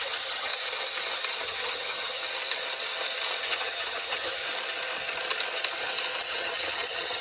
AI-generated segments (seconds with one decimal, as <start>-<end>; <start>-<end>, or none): 0.0-0.5; 1.4-2.2; 3.4-4.4; 6.2-7.2